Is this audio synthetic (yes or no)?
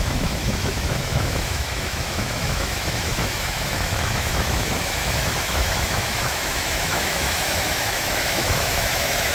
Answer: yes